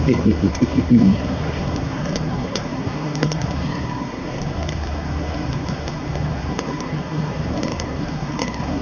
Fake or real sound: fake